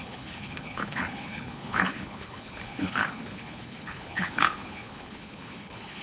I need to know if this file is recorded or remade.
remade